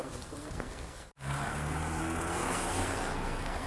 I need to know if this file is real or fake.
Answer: fake